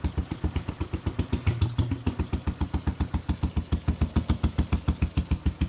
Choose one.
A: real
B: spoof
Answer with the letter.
A